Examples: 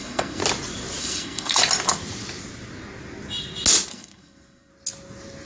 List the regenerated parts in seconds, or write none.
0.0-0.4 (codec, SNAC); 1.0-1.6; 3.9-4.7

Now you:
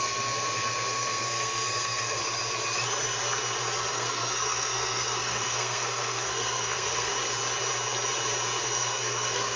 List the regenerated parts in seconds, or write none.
0.0-2.2 (codec, SNAC); 3.9-7.1; 8.6-9.6

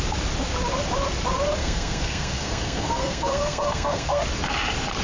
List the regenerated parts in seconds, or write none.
1.6-4.2 (codec, SNAC)

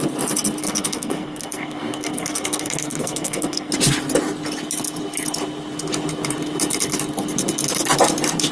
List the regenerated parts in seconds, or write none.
0.6-3.7 (codec, SNAC)

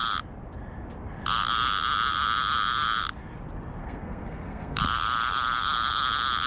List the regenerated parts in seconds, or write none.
3.8-4.8 (codec, SNAC)

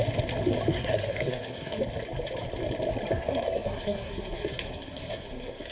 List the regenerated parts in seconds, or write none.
0.7-1.8 (codec, SNAC); 3.1-5.7

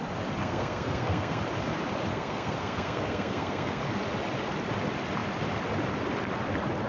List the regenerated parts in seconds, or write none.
0.4-1.4 (codec, SNAC); 2.1-3.8

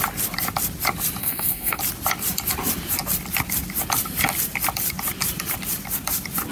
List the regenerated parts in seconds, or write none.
1.2-1.8 (codec, SNAC)